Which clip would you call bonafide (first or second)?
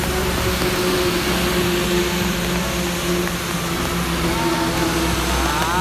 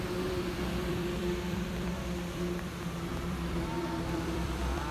first